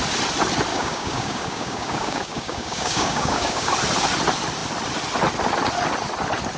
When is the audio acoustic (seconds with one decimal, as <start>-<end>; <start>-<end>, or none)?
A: 0.0-0.7; 3.7-6.6